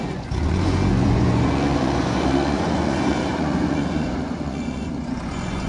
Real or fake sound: fake